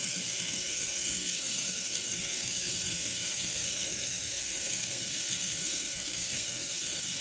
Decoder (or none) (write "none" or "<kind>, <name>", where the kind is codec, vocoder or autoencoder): codec, SNAC